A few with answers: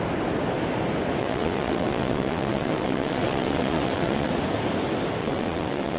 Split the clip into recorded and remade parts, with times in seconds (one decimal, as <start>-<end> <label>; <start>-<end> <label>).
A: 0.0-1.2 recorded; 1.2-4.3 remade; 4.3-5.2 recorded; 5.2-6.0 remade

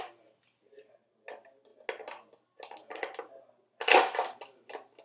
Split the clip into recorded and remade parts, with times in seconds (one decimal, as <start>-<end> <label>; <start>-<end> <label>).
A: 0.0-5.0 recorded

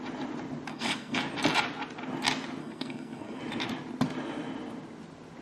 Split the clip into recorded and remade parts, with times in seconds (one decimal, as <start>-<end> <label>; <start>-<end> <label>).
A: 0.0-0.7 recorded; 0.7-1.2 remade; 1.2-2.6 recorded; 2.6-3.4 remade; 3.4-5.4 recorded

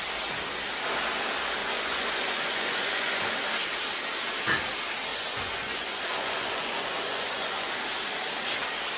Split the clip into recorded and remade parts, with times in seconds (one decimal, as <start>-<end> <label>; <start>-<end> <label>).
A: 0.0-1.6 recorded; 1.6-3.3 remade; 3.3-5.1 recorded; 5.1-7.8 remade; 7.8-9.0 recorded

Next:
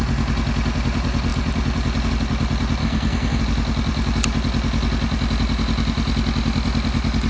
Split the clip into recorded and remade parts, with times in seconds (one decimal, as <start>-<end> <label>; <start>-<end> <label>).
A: 0.0-2.8 recorded; 2.8-3.4 remade; 3.4-7.3 recorded

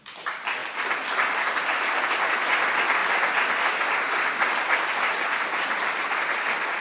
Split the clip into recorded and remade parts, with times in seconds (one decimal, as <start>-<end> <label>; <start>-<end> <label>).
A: 0.0-6.8 recorded

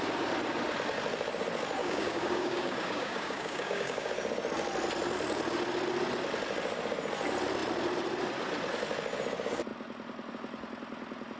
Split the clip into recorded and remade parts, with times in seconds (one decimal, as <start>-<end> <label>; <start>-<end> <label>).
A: 0.0-1.8 recorded; 1.8-4.1 remade; 4.1-11.4 recorded